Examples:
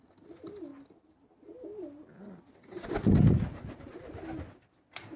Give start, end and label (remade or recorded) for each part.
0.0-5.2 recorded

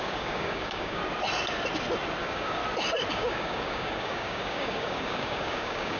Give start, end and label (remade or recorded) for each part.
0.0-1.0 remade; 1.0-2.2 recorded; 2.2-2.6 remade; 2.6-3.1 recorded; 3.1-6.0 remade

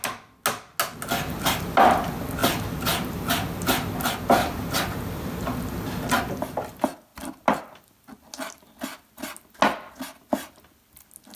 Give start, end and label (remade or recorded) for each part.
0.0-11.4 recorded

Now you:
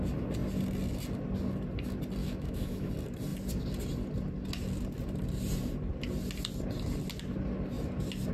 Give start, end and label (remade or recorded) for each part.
0.0-2.2 recorded; 2.2-2.9 remade; 2.9-8.3 recorded

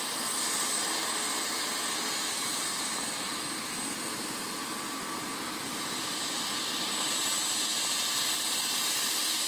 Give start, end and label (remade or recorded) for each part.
0.0-9.5 recorded